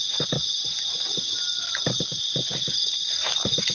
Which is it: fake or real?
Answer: real